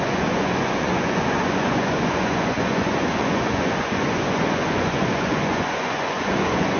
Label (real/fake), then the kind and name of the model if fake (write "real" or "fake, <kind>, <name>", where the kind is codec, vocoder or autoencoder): fake, vocoder, Vocos